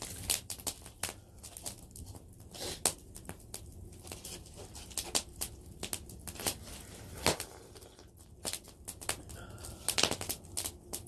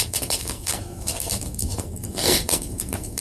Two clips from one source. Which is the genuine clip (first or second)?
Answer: first